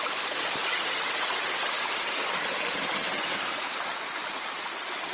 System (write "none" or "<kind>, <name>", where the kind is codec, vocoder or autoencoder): none